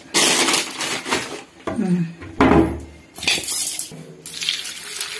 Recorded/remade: recorded